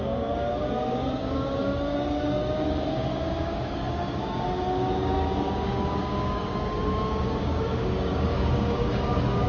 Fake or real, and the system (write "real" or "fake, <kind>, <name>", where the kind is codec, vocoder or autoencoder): fake, codec, DAC